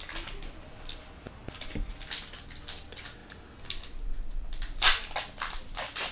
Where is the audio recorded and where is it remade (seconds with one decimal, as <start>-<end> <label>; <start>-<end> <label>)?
0.0-6.1 recorded